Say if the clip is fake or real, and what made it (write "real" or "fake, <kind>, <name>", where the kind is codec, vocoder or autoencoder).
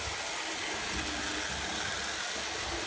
real